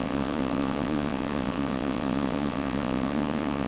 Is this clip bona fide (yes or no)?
no